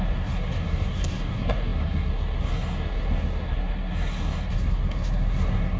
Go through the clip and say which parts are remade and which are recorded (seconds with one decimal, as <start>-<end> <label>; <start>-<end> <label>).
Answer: 0.0-5.8 remade

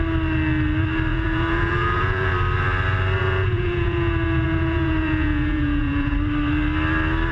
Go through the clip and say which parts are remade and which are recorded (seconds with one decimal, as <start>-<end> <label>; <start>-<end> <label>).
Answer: 0.0-1.1 recorded; 1.1-2.3 remade; 2.3-3.2 recorded; 3.2-6.1 remade; 6.1-7.3 recorded

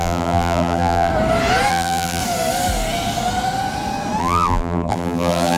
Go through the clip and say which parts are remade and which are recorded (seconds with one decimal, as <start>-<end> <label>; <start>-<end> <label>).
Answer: 0.0-1.1 remade; 1.1-1.7 recorded; 1.7-2.2 remade; 2.2-4.2 recorded; 4.2-5.6 remade

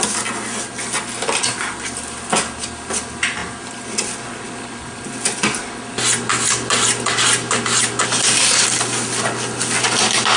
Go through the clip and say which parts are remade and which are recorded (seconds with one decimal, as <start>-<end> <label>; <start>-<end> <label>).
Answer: 0.0-10.4 recorded

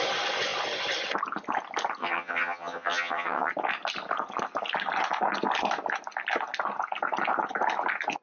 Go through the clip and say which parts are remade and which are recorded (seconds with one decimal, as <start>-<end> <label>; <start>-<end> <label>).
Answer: 0.0-2.0 recorded; 2.0-3.5 remade; 3.5-8.2 recorded

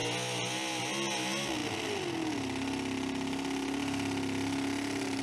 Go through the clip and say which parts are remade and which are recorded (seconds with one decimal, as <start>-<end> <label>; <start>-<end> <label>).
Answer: 0.0-5.2 recorded

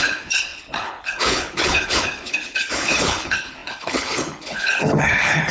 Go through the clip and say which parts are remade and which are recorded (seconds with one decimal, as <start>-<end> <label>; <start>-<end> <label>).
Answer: 0.0-5.5 remade